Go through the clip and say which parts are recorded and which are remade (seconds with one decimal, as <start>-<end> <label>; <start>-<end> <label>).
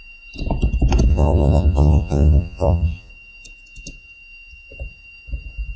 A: 0.0-1.1 recorded; 1.1-3.1 remade; 3.1-5.8 recorded